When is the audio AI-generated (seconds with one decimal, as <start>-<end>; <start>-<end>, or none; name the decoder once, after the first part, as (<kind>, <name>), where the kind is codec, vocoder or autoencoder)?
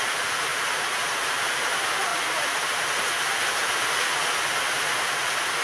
none